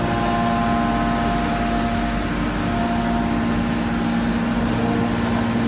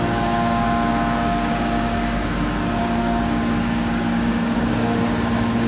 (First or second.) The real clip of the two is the first